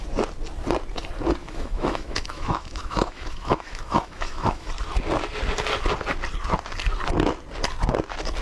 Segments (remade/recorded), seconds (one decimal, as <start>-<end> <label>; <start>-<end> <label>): 0.0-1.4 recorded; 1.4-4.7 remade; 4.7-8.4 recorded

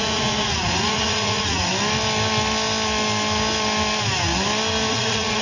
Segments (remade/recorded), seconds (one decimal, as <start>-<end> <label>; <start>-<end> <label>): 0.0-1.7 remade; 1.7-4.9 recorded; 4.9-5.4 remade

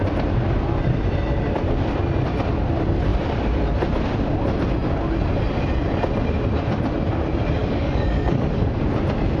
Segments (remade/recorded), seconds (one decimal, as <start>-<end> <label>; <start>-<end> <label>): 0.0-7.6 recorded; 7.6-8.8 remade; 8.8-9.4 recorded

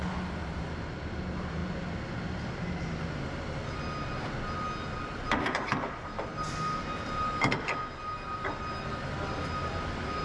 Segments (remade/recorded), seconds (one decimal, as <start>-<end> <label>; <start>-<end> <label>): 0.0-10.2 recorded

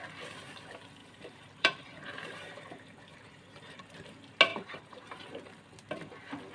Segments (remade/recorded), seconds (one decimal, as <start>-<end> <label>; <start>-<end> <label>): 0.0-1.0 recorded; 1.0-3.8 remade; 3.8-4.5 recorded; 4.5-5.2 remade; 5.2-6.5 recorded

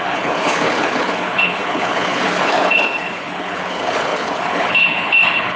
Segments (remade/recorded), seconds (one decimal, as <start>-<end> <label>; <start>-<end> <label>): 0.0-5.6 remade

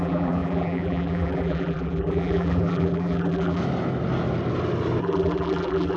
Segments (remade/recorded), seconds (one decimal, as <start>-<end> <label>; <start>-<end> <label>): 0.0-3.6 remade; 3.6-5.0 recorded; 5.0-6.0 remade

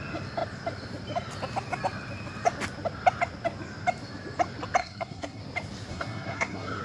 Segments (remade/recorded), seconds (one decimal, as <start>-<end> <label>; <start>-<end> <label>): 0.0-4.8 recorded; 4.8-5.4 remade; 5.4-5.9 recorded; 5.9-6.8 remade